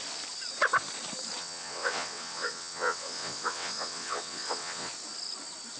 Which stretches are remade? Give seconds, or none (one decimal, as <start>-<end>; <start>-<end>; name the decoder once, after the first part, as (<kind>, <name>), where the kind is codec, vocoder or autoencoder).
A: 1.4-4.9 (vocoder, WaveNeXt)